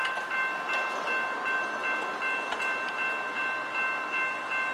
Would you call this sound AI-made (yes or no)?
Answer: no